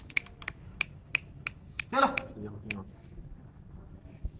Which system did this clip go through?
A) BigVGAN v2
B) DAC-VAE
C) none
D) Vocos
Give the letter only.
B